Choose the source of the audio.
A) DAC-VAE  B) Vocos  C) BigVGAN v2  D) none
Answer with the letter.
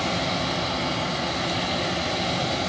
D